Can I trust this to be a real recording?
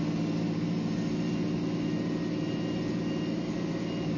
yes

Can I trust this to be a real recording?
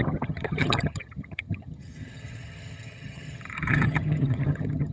no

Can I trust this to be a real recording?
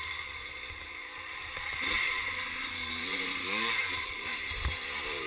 no